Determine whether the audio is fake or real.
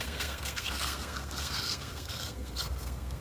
fake